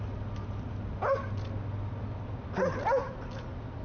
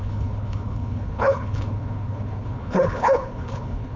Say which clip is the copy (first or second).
second